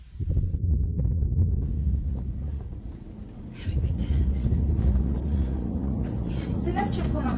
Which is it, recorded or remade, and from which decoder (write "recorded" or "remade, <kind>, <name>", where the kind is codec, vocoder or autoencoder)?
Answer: remade, vocoder, Vocos